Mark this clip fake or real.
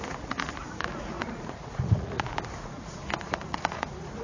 fake